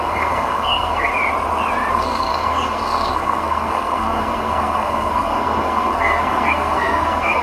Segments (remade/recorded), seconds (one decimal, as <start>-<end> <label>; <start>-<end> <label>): 0.0-1.1 remade; 1.1-1.9 recorded; 1.9-7.4 remade